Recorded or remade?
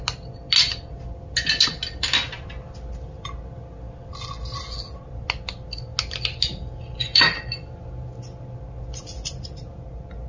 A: recorded